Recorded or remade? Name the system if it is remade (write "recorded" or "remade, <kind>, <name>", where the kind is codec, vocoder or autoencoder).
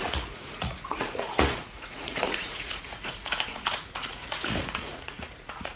remade, vocoder, Vocos